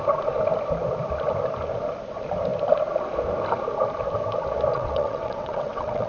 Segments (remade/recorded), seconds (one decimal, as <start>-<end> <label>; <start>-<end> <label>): 0.0-4.7 recorded; 4.7-6.1 remade